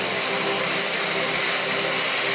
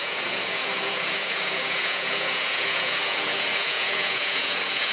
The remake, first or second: second